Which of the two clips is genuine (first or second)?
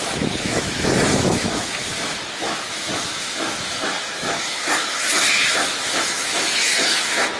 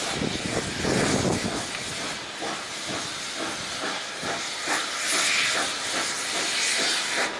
second